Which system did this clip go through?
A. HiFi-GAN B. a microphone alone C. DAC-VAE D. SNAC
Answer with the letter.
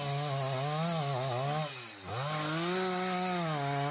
B